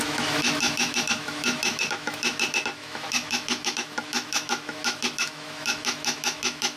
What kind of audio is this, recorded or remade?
remade